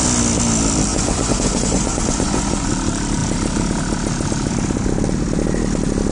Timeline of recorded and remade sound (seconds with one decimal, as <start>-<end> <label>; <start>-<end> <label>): 0.0-0.9 recorded; 0.9-2.7 remade; 2.7-6.1 recorded